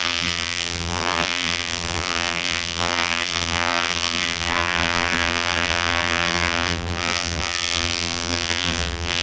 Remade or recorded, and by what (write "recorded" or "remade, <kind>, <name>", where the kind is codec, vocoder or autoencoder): remade, vocoder, BigVGAN v2